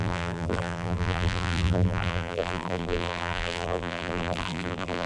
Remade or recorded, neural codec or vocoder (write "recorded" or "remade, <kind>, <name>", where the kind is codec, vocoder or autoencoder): remade, vocoder, BigVGAN v2